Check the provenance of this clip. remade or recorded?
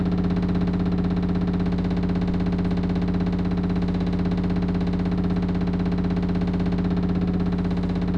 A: recorded